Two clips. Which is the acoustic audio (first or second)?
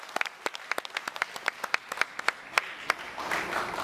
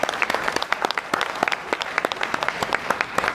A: first